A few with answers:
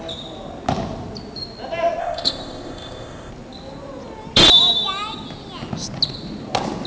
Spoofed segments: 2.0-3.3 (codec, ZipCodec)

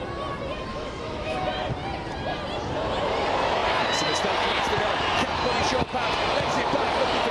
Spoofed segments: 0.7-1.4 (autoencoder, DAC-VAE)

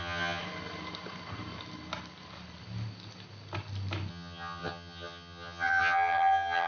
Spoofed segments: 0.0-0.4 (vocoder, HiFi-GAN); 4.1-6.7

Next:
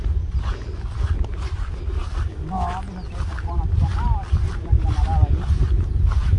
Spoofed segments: none

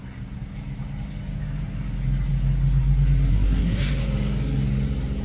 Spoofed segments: 3.3-3.9 (codec, SNAC)

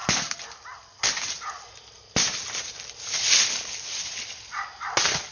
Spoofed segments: none

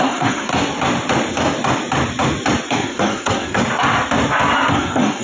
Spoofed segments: 0.0-0.5 (codec, SNAC); 2.7-3.6; 4.7-5.2